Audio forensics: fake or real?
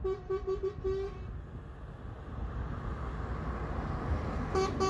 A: real